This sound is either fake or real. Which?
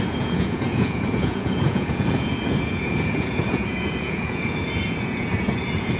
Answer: fake